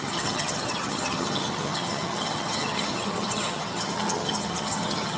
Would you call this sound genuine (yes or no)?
no